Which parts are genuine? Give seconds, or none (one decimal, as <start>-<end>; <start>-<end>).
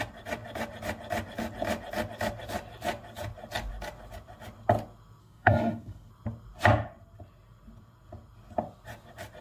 0.0-5.2; 6.1-9.4